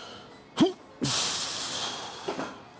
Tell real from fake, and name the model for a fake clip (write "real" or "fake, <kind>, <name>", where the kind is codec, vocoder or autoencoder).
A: real